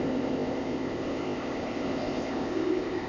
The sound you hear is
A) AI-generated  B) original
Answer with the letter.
A